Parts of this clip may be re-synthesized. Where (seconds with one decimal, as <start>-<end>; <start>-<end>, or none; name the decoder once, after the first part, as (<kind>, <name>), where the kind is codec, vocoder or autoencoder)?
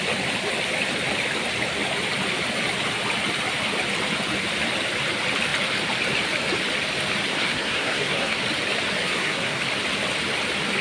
7.3-8.4 (codec, SNAC); 9.0-9.6